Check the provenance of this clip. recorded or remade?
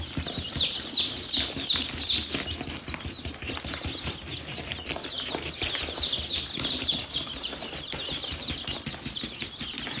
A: recorded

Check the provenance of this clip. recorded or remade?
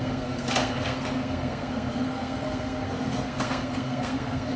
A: remade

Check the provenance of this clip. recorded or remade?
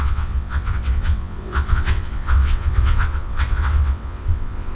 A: remade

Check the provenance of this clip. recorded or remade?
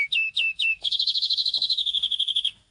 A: remade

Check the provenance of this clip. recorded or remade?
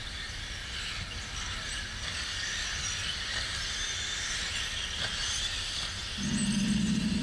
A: recorded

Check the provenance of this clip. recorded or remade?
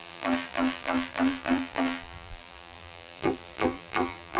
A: remade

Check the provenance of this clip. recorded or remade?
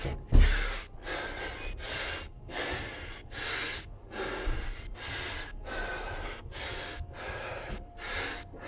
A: recorded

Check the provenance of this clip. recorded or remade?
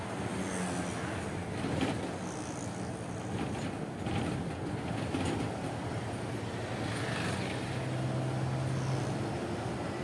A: recorded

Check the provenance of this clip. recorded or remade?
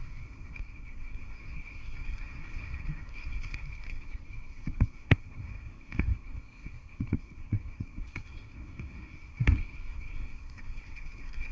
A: remade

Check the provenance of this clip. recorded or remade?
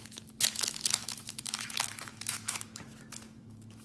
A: remade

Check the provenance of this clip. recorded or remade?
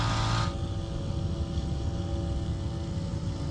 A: recorded